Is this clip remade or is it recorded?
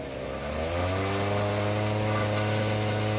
recorded